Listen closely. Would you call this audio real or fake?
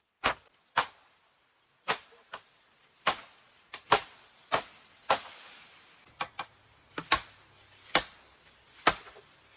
real